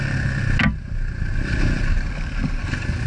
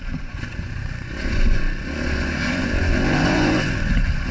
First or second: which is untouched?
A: first